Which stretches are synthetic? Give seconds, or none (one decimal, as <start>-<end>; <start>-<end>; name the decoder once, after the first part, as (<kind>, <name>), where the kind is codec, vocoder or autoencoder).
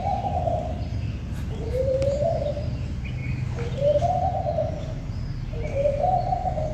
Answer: none